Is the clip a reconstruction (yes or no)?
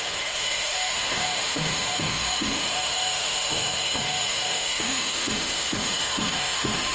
yes